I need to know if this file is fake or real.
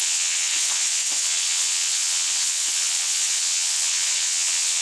fake